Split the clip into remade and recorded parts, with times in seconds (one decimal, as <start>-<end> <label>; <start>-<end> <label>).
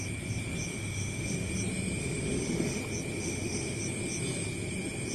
0.0-0.7 recorded; 0.7-1.5 remade; 1.5-2.0 recorded; 2.0-2.8 remade; 2.8-3.2 recorded; 3.2-3.8 remade; 3.8-5.1 recorded